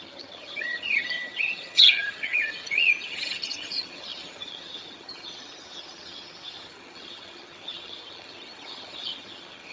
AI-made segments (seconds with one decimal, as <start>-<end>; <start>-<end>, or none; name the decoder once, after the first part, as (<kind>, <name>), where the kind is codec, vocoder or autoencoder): 0.0-9.7 (vocoder, HiFi-GAN)